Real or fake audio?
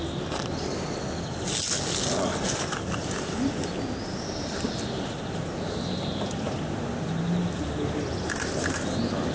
real